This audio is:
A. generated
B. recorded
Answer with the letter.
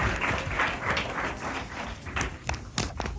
B